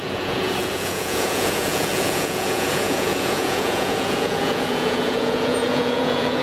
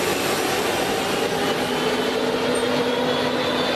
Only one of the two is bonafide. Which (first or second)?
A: second